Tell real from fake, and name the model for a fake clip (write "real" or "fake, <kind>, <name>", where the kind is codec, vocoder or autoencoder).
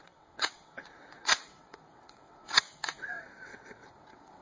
fake, vocoder, WaveNeXt